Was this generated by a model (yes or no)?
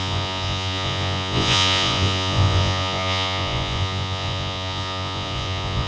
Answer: yes